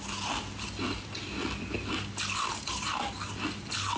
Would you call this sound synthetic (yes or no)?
no